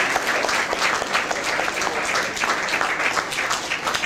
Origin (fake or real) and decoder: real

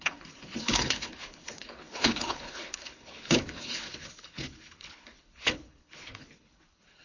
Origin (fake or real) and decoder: fake, codec, HILCodec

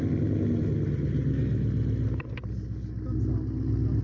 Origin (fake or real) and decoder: real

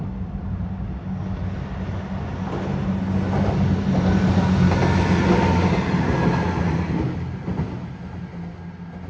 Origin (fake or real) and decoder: real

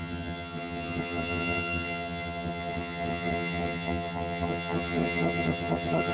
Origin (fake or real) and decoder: fake, vocoder, HiFi-GAN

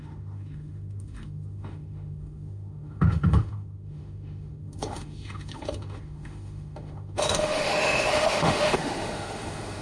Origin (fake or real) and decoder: fake, autoencoder, DAC-VAE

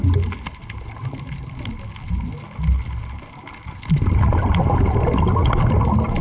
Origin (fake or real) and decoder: real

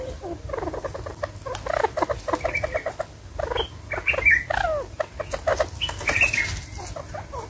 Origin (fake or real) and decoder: real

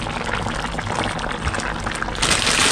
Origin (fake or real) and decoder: real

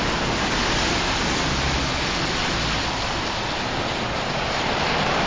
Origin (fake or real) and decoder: real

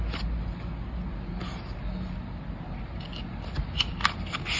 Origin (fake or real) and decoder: real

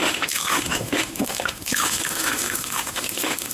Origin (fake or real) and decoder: fake, autoencoder, DAC-VAE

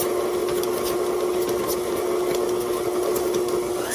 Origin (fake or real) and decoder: real